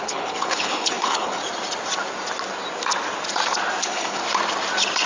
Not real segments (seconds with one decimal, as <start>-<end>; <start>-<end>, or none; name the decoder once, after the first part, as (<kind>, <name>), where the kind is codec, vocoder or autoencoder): 0.0-1.4 (codec, HILCodec); 3.8-4.2